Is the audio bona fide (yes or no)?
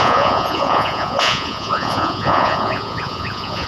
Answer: no